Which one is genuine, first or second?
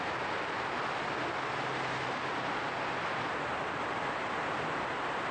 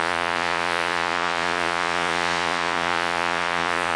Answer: first